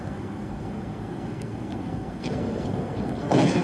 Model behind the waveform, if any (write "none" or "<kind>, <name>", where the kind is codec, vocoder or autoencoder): codec, SNAC